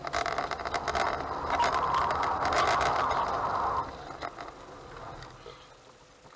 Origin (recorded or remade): recorded